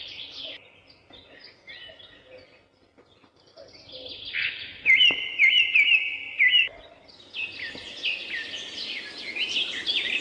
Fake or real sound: real